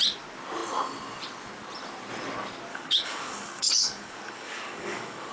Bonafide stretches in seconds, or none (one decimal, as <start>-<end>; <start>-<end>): 0.0-2.7